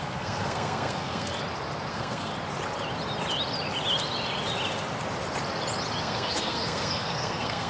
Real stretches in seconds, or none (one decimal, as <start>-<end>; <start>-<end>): 1.3-1.9; 2.3-6.0

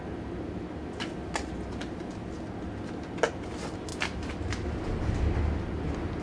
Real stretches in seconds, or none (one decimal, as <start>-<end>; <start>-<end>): 0.0-6.2

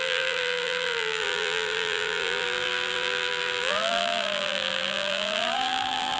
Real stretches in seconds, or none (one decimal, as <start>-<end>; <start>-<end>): none

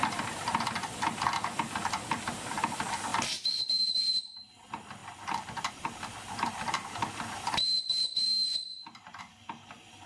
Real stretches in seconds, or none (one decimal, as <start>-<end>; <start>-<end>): 3.1-4.0; 5.0-5.7; 8.7-9.2

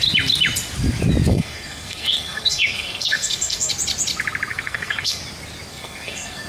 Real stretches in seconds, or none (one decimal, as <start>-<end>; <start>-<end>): 0.0-1.3; 3.7-4.5; 5.2-5.7

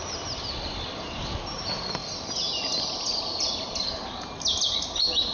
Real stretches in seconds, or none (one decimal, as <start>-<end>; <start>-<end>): 0.0-5.3

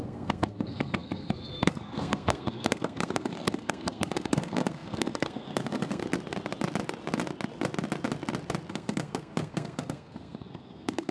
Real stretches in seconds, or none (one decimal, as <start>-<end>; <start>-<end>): 6.0-8.7